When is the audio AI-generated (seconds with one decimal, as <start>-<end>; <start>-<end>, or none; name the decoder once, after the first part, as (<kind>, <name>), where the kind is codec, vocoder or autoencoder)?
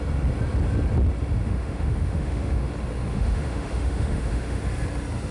1.4-2.7 (autoencoder, DAC-VAE); 3.1-4.6